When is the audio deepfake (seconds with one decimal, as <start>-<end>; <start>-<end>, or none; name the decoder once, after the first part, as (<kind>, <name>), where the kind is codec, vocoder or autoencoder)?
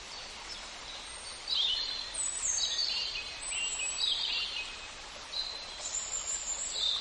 2.8-4.4 (vocoder, BigVGAN v2)